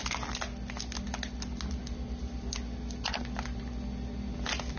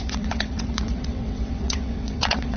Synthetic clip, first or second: second